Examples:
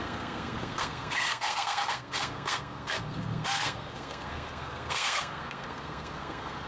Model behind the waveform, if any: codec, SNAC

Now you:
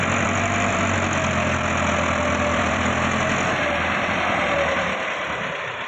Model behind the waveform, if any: vocoder, BigVGAN v2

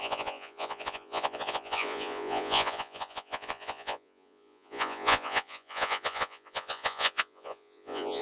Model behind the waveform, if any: vocoder, Vocos